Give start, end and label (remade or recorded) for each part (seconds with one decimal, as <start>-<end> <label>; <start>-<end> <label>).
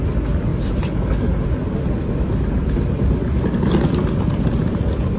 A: 0.0-5.2 recorded